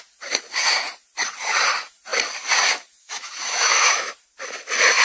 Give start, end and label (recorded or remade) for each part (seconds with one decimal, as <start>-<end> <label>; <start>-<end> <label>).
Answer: 0.0-3.0 recorded; 3.0-4.1 remade; 4.1-5.0 recorded